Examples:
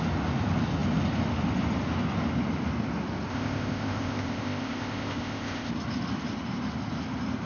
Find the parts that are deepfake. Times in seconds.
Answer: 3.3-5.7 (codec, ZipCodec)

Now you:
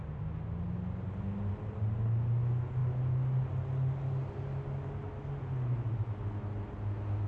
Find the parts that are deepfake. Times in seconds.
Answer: none

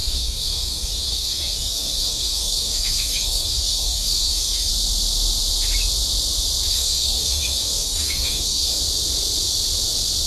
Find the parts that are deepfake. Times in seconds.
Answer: 0.0-4.7 (codec, DAC); 6.7-8.8

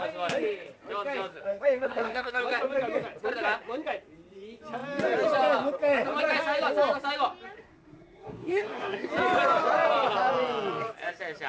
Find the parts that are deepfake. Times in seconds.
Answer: 1.3-2.4 (codec, SNAC); 7.6-9.1

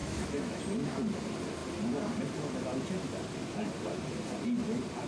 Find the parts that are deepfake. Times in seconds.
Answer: 0.0-0.6 (autoencoder, DAC-VAE)

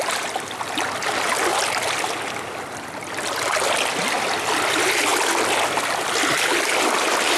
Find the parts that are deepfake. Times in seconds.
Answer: none